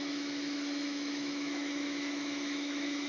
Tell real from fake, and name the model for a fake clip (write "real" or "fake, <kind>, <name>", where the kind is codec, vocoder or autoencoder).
fake, autoencoder, DAC-VAE